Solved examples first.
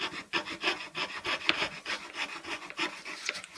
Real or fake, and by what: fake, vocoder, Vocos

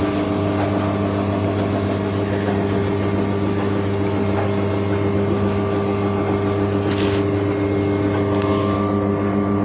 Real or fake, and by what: real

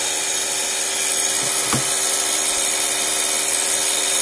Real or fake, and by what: real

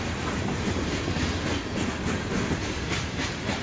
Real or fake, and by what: real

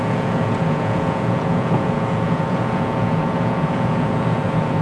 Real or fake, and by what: fake, vocoder, Vocos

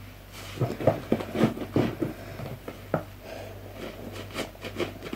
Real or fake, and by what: fake, vocoder, BigVGAN v2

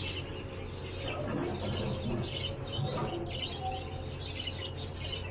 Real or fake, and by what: real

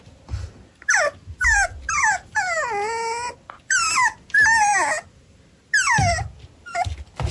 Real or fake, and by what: real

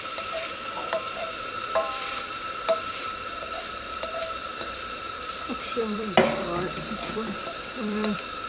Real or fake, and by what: fake, vocoder, BigVGAN v2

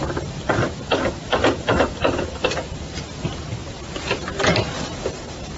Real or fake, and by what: fake, vocoder, BigVGAN v2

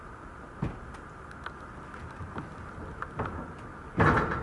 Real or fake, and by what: real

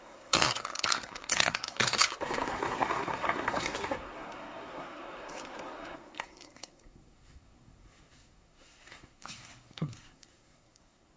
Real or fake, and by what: fake, codec, SNAC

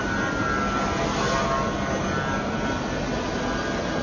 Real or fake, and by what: real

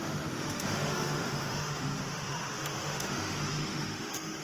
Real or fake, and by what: fake, autoencoder, DAC-VAE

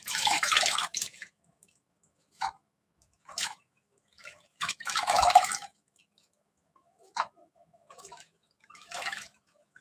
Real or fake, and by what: fake, autoencoder, DAC-VAE